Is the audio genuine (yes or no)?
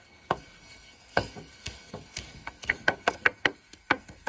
no